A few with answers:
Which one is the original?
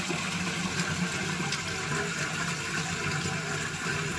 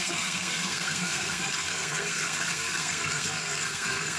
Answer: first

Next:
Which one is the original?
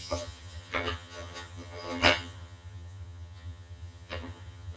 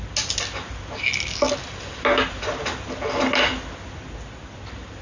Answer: second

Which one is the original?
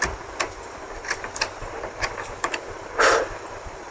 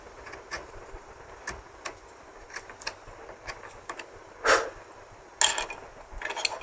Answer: second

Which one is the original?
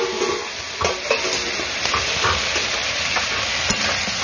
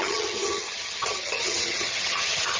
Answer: first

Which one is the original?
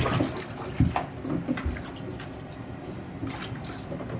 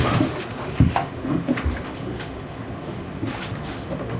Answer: first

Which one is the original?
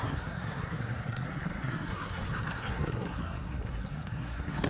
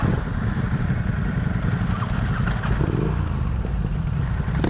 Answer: second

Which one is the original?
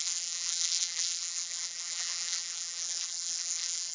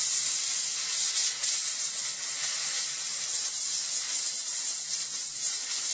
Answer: second